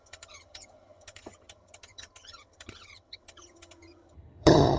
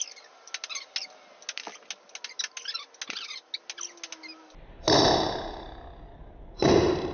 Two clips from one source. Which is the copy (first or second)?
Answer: first